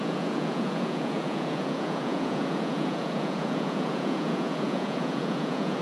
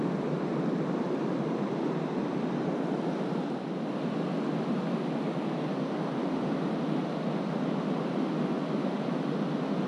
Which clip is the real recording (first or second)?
second